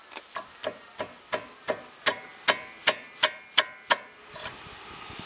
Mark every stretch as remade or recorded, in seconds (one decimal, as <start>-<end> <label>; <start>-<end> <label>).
0.0-5.3 recorded